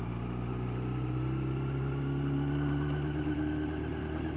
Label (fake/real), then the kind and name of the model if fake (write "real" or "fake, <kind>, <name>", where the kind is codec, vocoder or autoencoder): fake, vocoder, BigVGAN v2